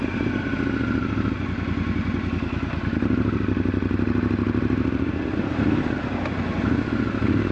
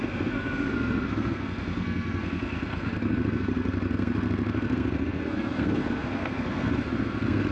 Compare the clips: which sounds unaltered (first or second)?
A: first